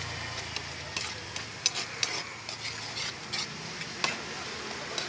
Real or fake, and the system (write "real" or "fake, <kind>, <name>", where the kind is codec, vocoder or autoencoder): real